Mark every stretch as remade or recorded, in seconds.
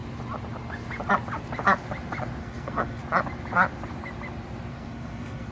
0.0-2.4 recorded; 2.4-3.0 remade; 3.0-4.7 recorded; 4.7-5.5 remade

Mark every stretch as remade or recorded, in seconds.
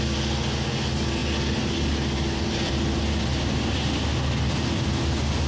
0.0-5.5 recorded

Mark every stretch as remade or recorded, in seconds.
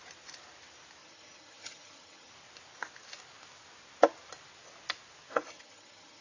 0.0-1.0 recorded; 1.0-2.3 remade; 2.3-5.3 recorded; 5.3-6.2 remade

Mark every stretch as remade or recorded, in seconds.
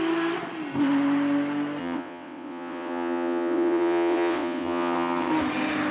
0.0-1.8 recorded; 1.8-5.3 remade; 5.3-5.9 recorded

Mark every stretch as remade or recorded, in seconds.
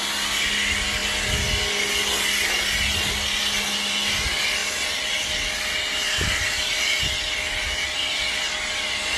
0.0-9.2 recorded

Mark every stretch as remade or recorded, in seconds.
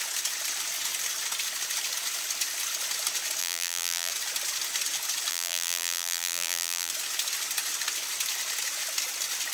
0.0-3.4 recorded; 3.4-4.1 remade; 4.1-5.3 recorded; 5.3-6.9 remade; 6.9-9.5 recorded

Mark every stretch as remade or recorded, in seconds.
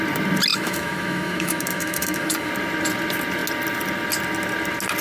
0.0-0.5 recorded; 0.5-2.5 remade; 2.5-5.0 recorded